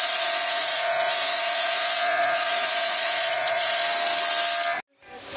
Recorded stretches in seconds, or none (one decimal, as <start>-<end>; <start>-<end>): 3.8-5.4